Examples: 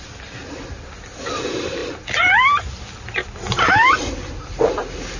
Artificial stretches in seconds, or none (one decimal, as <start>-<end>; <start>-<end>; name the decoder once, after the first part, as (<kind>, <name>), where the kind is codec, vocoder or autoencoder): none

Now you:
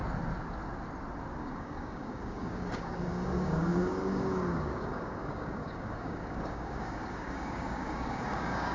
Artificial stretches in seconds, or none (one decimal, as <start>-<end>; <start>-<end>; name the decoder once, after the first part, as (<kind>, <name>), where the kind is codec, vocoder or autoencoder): 1.4-8.7 (codec, DAC)

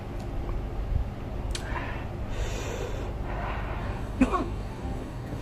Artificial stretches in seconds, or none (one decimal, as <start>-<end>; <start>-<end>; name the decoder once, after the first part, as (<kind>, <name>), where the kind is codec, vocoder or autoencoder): 3.8-5.4 (codec, DAC)

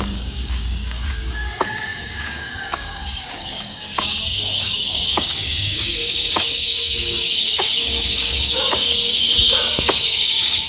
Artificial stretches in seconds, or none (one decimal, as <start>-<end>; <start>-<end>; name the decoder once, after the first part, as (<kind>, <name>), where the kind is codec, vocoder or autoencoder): 0.0-10.7 (codec, DAC)

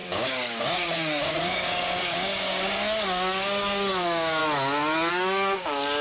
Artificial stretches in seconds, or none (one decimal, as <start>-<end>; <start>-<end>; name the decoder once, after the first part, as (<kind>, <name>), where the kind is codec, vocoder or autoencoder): 0.0-4.4 (codec, DAC); 5.1-6.0

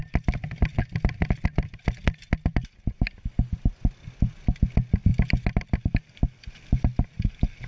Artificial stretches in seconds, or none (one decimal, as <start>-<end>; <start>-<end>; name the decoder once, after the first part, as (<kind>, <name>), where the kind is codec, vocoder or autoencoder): none

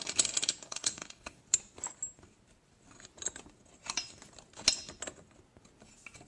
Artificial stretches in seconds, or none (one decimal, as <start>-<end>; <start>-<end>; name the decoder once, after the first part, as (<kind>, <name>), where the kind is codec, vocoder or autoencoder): 0.7-1.4 (codec, DAC)

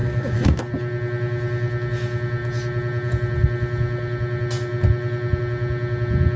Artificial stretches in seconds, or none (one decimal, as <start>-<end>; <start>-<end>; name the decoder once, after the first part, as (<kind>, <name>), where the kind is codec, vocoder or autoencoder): 0.0-0.6 (codec, DAC)